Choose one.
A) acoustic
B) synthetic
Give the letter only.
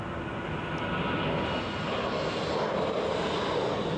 A